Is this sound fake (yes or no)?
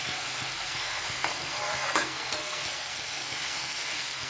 yes